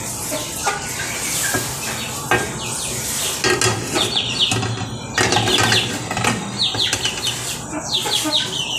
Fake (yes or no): no